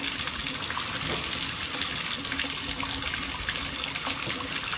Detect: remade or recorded recorded